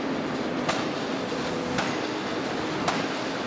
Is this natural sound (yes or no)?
yes